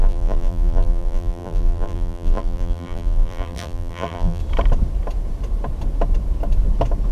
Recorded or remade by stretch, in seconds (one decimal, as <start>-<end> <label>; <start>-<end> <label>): 0.0-4.4 remade; 4.4-7.1 recorded